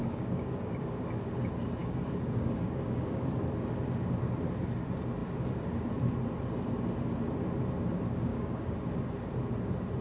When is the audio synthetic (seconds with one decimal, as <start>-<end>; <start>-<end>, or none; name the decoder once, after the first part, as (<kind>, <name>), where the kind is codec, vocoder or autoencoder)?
0.0-1.4 (codec, DAC); 1.8-3.2; 8.3-8.9